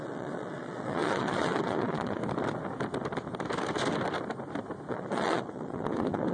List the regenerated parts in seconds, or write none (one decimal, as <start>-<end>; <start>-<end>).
0.0-2.2; 4.9-6.3